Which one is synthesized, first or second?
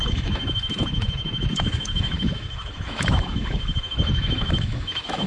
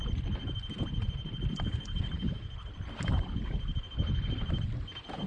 first